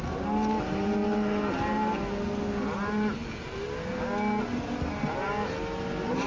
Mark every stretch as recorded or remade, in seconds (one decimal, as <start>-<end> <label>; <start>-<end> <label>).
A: 0.0-6.3 recorded